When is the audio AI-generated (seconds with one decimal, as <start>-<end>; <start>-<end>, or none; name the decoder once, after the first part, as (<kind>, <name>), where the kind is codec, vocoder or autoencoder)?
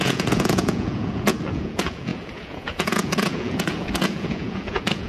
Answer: 0.0-5.1 (vocoder, Vocos)